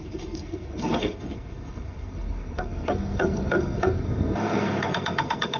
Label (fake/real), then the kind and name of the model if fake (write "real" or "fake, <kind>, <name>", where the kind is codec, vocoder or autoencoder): fake, codec, SNAC